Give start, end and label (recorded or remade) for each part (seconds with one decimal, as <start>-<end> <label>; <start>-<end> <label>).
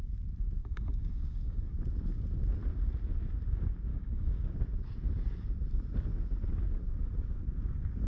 0.0-0.6 recorded; 0.6-1.6 remade; 1.6-3.9 recorded; 3.9-4.5 remade; 4.5-8.1 recorded